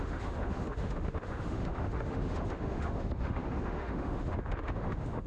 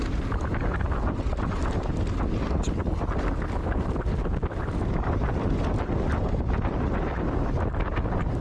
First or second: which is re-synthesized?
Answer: first